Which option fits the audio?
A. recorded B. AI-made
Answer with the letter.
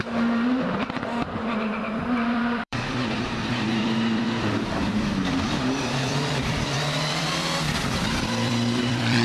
B